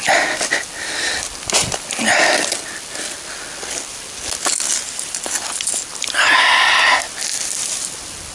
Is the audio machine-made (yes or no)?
no